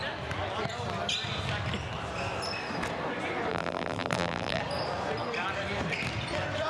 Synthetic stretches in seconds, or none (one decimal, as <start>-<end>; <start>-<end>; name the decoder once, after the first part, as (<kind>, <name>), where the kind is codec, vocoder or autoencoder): 3.5-4.6 (vocoder, BigVGAN v2)